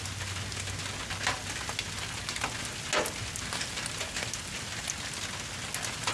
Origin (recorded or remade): recorded